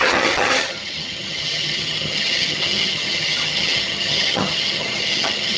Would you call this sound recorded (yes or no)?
no